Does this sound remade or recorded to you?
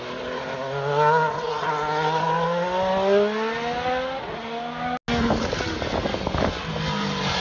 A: recorded